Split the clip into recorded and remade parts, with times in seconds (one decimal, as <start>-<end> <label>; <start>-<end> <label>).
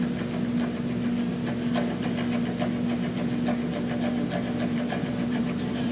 0.0-4.7 recorded; 4.7-5.9 remade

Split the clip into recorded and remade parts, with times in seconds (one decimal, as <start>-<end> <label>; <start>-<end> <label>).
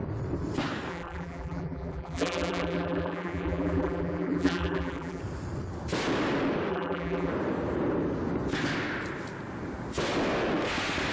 0.0-0.9 recorded; 0.9-5.2 remade; 5.2-6.7 recorded; 6.7-7.3 remade; 7.3-11.1 recorded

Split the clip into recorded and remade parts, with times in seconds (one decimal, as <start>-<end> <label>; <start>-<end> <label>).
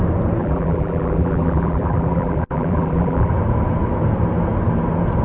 0.0-0.4 recorded; 0.4-3.3 remade; 3.3-5.2 recorded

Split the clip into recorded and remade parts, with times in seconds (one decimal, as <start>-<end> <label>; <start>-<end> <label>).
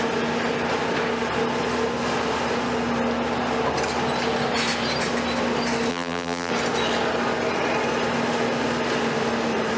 0.0-5.9 recorded; 5.9-6.5 remade; 6.5-9.8 recorded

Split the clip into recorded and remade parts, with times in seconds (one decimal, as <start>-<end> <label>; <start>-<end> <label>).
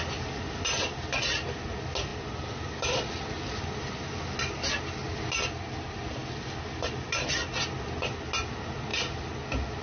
0.0-9.8 recorded